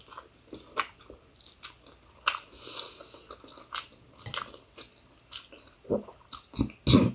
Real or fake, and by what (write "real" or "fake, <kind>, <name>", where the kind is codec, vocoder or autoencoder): real